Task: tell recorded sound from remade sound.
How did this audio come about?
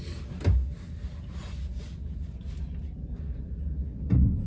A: recorded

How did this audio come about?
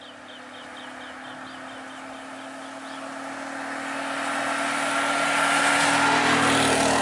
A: recorded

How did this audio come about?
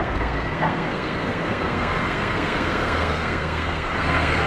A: remade